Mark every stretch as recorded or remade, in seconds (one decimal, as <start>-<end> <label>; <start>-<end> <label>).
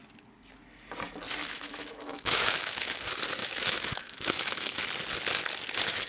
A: 0.0-1.4 recorded; 1.4-3.0 remade; 3.0-3.4 recorded; 3.4-4.8 remade; 4.8-6.1 recorded